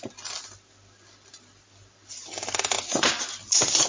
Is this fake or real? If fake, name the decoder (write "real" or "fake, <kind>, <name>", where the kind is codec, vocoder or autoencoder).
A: real